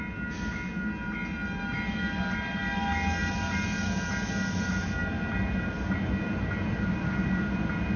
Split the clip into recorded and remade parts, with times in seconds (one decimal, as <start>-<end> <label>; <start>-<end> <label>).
0.0-8.0 recorded